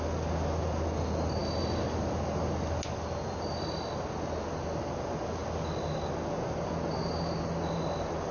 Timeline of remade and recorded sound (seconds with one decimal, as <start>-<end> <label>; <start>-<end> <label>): 0.0-8.3 recorded